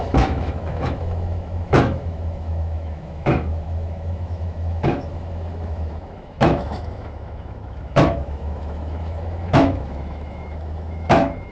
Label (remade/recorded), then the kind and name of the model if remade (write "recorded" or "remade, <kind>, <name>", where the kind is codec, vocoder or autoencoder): remade, autoencoder, DAC-VAE